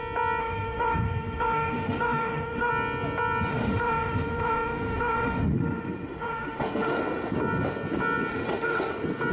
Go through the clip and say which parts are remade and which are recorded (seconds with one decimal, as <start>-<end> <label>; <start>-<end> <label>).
0.0-0.4 recorded; 0.4-2.7 remade; 2.7-3.5 recorded; 3.5-7.0 remade; 7.0-8.3 recorded; 8.3-8.9 remade; 8.9-9.3 recorded